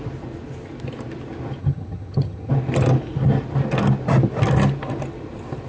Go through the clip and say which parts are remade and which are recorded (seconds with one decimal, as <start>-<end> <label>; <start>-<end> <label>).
0.0-1.6 recorded; 1.6-2.5 remade; 2.5-5.7 recorded